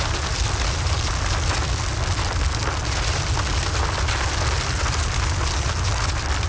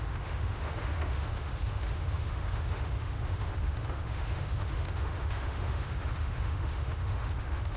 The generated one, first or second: second